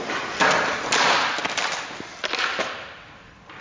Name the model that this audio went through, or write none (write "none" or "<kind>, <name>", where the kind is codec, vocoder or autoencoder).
none